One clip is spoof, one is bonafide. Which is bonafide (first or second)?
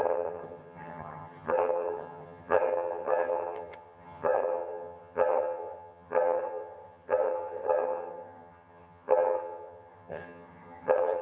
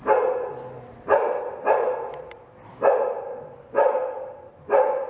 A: second